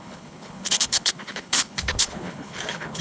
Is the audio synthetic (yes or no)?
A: yes